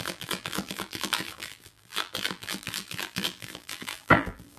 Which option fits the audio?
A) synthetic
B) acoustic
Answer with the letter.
A